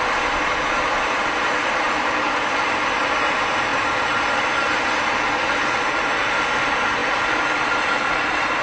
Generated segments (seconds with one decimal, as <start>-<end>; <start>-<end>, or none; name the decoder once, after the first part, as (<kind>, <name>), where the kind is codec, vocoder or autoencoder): none